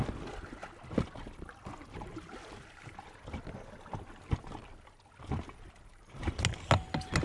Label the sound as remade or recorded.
recorded